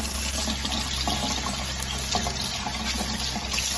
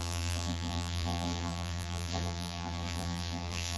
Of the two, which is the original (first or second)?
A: first